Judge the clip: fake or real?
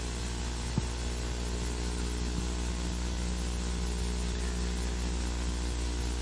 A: real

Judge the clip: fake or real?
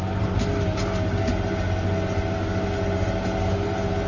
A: real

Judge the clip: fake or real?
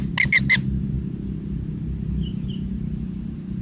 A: real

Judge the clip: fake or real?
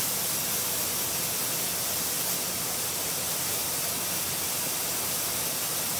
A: real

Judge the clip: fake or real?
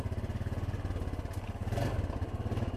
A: real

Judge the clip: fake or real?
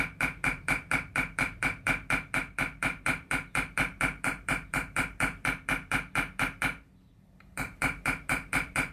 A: fake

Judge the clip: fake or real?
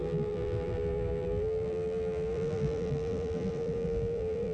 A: fake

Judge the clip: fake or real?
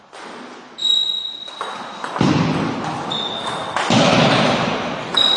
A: real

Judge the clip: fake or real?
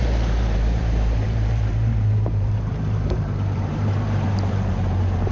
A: fake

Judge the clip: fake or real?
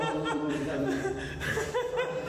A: fake